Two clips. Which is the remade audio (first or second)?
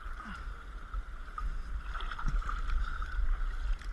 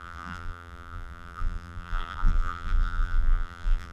second